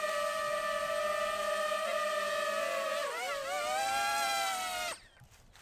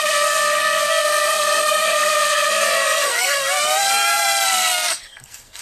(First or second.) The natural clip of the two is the first